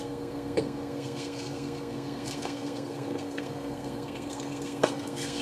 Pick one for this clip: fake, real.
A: fake